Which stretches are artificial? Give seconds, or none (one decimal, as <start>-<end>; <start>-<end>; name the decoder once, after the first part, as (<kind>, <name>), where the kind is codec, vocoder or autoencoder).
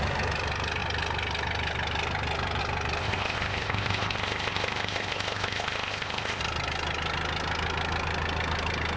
3.0-6.4 (codec, ZipCodec)